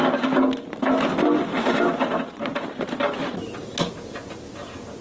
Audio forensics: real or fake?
real